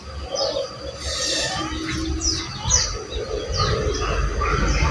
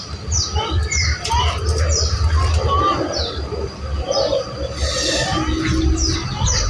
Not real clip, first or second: second